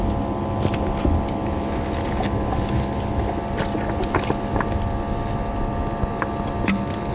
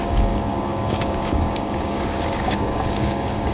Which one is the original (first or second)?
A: first